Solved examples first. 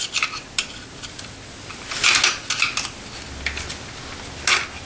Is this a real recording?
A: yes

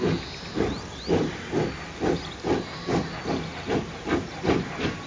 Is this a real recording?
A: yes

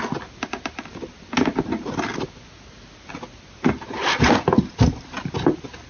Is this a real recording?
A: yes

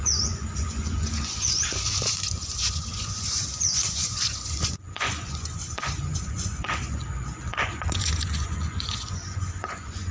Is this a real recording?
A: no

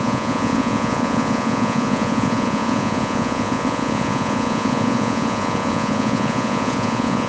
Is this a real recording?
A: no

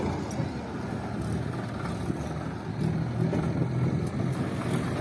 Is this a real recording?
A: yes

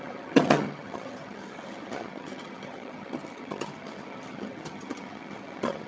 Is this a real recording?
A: no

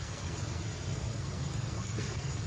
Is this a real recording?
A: no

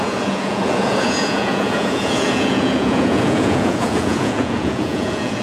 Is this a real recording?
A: no